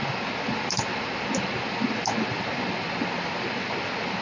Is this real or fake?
real